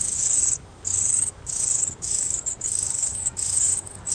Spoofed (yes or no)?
yes